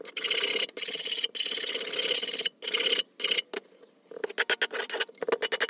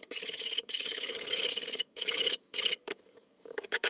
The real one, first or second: first